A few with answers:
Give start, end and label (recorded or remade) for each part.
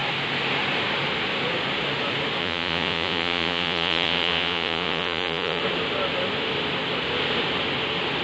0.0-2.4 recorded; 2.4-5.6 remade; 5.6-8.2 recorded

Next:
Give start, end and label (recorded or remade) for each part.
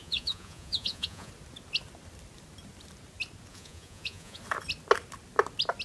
0.0-1.3 remade; 1.3-3.5 recorded; 3.5-4.4 remade; 4.4-5.8 recorded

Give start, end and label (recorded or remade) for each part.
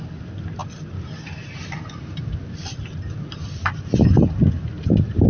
0.0-5.3 recorded